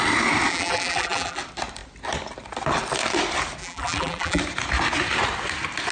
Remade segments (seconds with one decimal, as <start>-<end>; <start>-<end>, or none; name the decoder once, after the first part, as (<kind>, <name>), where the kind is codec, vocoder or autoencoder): 0.5-1.4 (vocoder, BigVGAN v2); 3.6-4.4